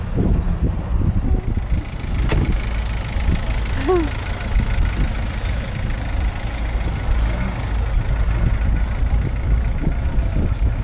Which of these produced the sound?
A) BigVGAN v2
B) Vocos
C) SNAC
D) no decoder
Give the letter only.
D